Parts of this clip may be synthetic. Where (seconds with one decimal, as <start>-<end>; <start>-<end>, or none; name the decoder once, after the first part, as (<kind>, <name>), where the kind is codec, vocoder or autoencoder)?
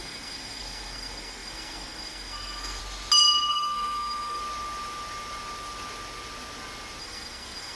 0.0-2.8 (codec, SNAC); 3.5-4.4; 7.0-7.7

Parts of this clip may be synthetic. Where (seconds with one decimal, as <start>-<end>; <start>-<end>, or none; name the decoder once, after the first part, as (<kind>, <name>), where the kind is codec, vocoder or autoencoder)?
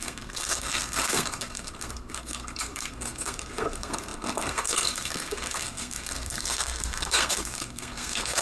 0.0-8.4 (codec, SNAC)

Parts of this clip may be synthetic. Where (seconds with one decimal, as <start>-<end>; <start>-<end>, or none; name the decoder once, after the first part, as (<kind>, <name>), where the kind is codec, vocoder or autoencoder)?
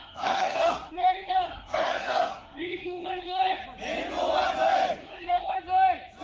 0.0-3.6 (codec, SNAC); 5.0-5.6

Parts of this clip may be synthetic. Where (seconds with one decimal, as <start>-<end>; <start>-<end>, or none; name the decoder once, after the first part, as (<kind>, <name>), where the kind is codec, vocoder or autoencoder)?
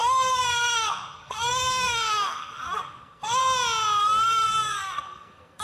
0.0-3.4 (codec, SNAC); 4.0-5.6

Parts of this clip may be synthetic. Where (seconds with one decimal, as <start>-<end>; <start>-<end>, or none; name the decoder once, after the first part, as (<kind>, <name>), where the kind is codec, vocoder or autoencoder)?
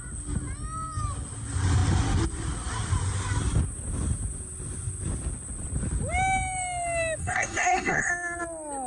7.2-8.1 (codec, SNAC)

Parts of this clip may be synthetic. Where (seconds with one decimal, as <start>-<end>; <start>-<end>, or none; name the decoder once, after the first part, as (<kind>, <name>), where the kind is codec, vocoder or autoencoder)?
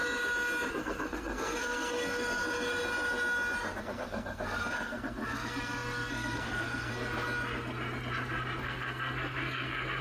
0.7-2.4 (codec, SNAC); 3.8-6.9; 8.6-10.0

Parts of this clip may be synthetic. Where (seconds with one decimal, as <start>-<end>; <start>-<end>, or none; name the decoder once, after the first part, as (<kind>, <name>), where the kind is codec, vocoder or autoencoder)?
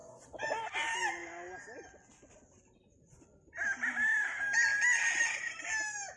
none